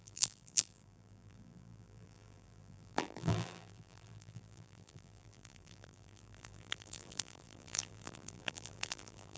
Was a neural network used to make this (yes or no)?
yes